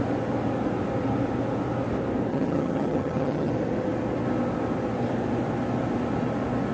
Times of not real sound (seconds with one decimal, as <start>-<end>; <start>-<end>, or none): 2.3-3.5